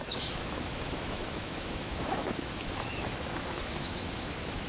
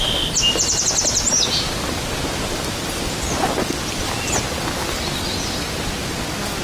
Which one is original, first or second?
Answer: second